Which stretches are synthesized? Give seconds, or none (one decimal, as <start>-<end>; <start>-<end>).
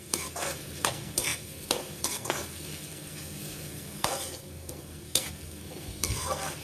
0.0-6.6